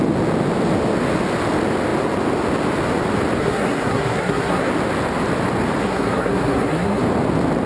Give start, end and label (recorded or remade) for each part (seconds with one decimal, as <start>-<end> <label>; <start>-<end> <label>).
0.0-3.4 recorded; 3.4-4.7 remade; 4.7-5.8 recorded; 5.8-7.0 remade; 7.0-7.7 recorded